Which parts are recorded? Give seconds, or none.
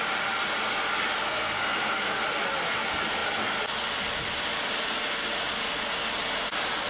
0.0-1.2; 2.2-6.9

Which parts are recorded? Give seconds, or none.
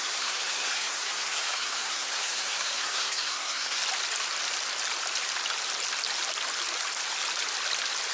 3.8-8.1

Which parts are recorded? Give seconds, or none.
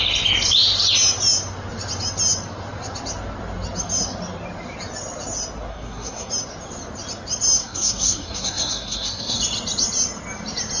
0.0-5.7; 6.3-7.6; 9.4-10.8